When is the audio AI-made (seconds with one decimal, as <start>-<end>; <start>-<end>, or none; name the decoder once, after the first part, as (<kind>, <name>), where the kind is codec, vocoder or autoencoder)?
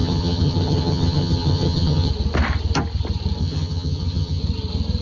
0.0-2.1 (vocoder, HiFi-GAN); 3.4-4.4